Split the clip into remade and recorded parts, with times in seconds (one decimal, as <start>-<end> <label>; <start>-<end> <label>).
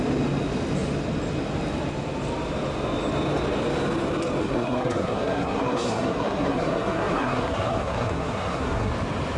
0.0-4.4 recorded; 4.4-8.9 remade; 8.9-9.4 recorded